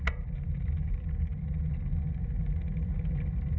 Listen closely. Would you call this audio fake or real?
real